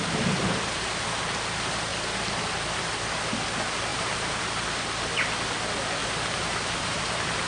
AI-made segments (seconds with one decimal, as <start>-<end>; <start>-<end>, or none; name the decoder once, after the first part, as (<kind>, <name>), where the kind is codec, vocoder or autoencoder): 3.9-4.5 (vocoder, BigVGAN v2); 6.0-7.5